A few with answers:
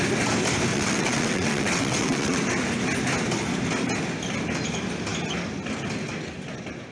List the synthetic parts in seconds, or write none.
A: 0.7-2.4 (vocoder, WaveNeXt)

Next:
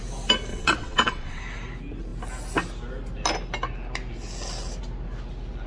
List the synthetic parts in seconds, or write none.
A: 0.5-1.4 (vocoder, WaveNeXt)

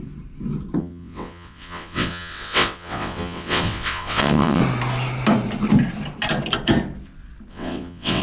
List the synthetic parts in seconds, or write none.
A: 0.8-4.6 (vocoder, WaveNeXt); 7.5-8.2

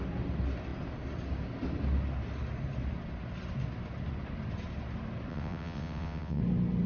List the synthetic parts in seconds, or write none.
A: 5.3-6.4 (vocoder, WaveNeXt)